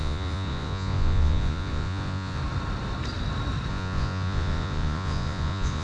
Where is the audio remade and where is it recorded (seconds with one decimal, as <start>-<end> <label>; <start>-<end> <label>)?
0.0-2.4 remade; 2.4-3.7 recorded; 3.7-5.8 remade